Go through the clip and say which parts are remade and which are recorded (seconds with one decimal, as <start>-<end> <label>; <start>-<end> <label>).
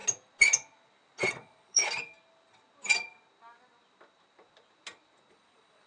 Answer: 0.0-1.3 recorded; 1.3-1.8 remade; 1.8-5.3 recorded; 5.3-5.9 remade